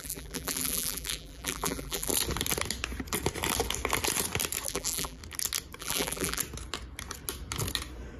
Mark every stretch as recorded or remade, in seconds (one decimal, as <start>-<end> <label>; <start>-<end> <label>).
0.0-2.1 remade; 2.1-4.7 recorded; 4.7-5.2 remade; 5.2-5.8 recorded; 5.8-6.4 remade; 6.4-8.2 recorded